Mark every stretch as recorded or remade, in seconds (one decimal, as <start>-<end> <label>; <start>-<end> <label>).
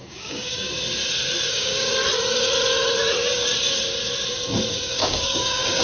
0.0-0.7 remade; 0.7-1.5 recorded; 1.5-1.9 remade; 1.9-4.7 recorded; 4.7-5.8 remade